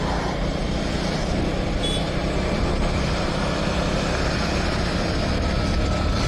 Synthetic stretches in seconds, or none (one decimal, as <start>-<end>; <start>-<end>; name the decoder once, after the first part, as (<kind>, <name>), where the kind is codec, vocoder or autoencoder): none